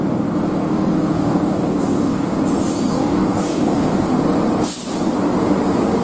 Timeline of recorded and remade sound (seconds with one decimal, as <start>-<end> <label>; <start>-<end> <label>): 0.0-0.6 recorded; 0.6-2.4 remade; 2.4-2.9 recorded; 2.9-4.1 remade; 4.1-6.0 recorded